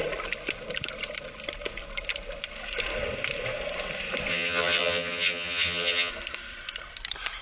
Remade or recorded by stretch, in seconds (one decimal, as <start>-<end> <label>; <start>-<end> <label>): 0.0-4.3 recorded; 4.3-6.1 remade; 6.1-7.4 recorded